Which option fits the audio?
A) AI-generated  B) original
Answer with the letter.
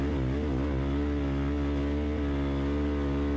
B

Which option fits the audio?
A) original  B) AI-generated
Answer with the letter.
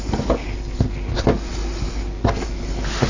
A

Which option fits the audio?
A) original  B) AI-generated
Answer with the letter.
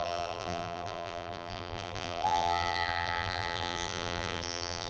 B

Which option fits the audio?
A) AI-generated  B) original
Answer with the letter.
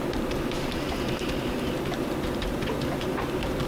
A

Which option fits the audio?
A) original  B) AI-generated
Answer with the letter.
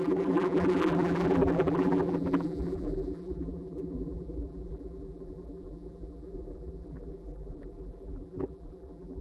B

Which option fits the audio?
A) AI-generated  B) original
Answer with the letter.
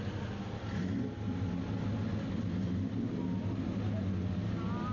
B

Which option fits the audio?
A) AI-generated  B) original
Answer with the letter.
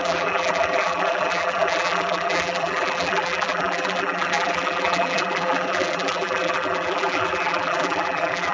A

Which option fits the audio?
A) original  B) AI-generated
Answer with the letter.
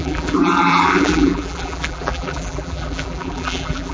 B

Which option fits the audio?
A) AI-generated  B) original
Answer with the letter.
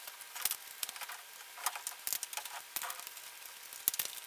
B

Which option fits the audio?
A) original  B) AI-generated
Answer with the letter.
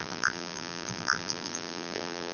B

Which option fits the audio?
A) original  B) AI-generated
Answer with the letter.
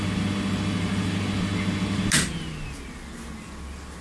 A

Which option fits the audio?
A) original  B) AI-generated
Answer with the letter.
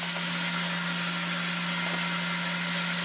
A